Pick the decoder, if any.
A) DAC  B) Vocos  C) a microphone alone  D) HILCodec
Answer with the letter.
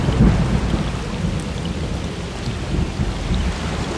C